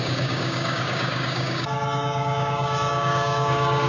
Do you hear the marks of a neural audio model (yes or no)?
yes